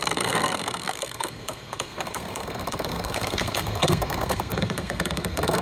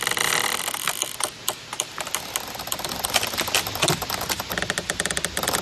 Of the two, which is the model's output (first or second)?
first